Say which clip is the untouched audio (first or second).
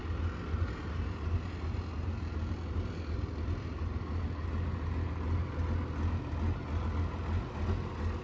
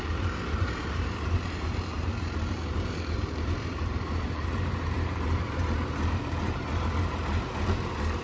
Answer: first